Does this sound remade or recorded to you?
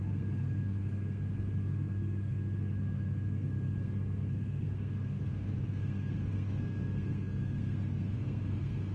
remade